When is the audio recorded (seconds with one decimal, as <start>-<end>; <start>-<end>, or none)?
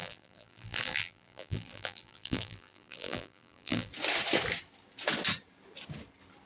3.9-6.5